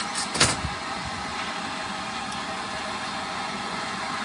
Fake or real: fake